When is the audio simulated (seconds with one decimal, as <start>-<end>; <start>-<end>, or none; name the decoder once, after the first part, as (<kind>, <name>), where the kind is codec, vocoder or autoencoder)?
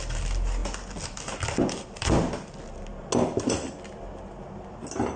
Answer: none